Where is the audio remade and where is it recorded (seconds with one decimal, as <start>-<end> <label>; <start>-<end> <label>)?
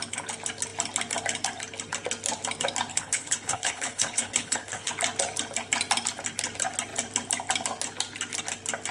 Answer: 0.0-2.9 recorded; 2.9-4.9 remade; 4.9-8.9 recorded